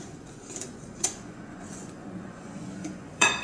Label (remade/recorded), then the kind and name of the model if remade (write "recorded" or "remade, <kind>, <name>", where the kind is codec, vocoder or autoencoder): remade, vocoder, Vocos